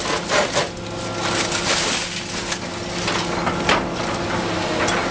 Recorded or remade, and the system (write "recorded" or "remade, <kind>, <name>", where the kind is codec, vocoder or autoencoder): recorded